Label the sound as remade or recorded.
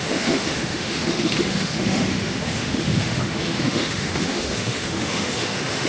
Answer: remade